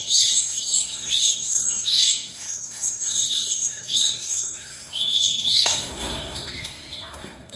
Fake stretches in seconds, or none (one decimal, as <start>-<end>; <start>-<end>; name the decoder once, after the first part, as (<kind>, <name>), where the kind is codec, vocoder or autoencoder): 0.0-7.6 (codec, SNAC)